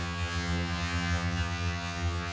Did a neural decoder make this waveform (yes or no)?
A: yes